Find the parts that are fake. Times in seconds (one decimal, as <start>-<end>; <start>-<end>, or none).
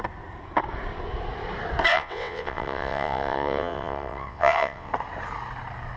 1.9-4.9